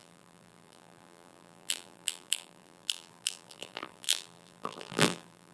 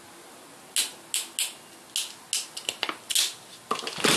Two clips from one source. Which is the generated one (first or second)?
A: first